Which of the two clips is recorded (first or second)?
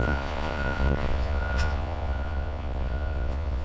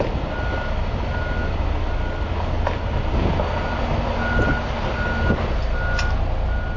second